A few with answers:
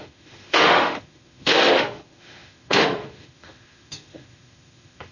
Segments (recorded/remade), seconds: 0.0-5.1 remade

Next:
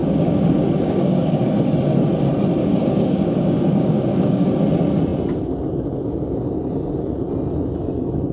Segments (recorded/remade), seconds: 0.0-1.5 remade; 1.5-2.6 recorded; 2.6-4.5 remade; 4.5-8.3 recorded

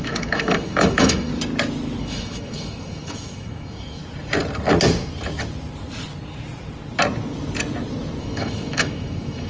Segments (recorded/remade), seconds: 0.0-1.3 remade; 1.3-2.0 recorded; 2.0-4.0 remade; 4.0-8.2 recorded; 8.2-9.5 remade

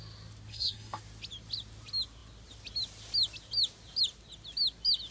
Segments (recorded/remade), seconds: 0.0-0.5 recorded; 0.5-1.0 remade; 1.0-5.1 recorded

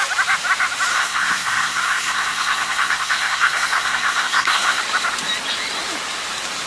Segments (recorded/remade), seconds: 0.0-0.9 recorded; 0.9-4.8 remade; 4.8-6.7 recorded

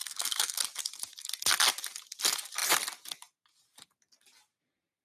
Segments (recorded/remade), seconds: 0.0-0.6 remade; 0.6-5.0 recorded

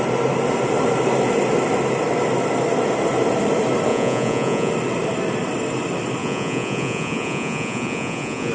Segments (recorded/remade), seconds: 0.0-3.9 recorded; 3.9-4.7 remade; 4.7-6.2 recorded; 6.2-8.5 remade

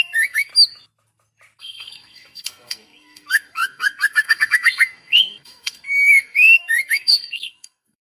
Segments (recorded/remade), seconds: 0.0-0.5 remade; 0.5-1.6 recorded; 1.6-8.0 remade